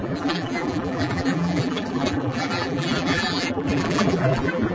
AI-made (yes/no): yes